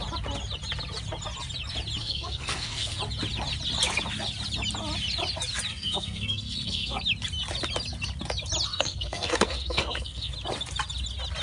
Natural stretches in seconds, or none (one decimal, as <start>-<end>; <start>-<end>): 0.0-2.0; 3.0-5.7; 7.0-8.7; 10.3-11.4